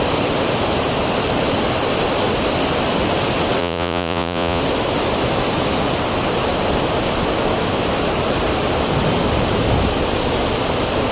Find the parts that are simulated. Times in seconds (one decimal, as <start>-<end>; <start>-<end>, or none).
3.6-4.6